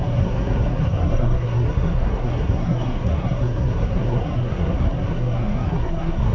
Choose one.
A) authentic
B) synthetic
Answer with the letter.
B